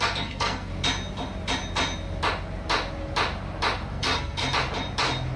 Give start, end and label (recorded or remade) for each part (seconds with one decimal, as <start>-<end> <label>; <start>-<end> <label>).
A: 0.0-0.7 remade; 0.7-3.9 recorded; 3.9-4.4 remade; 4.4-5.4 recorded